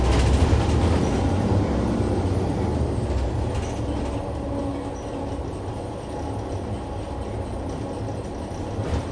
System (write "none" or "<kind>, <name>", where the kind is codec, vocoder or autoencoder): none